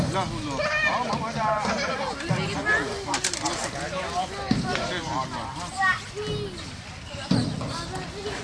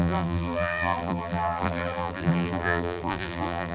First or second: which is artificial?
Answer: second